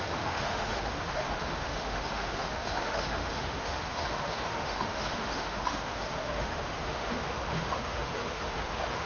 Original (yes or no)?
no